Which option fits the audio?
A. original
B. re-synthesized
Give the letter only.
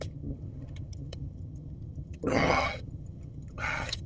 B